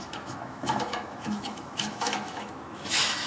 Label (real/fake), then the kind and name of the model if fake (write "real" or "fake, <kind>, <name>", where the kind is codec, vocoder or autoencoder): fake, autoencoder, DAC-VAE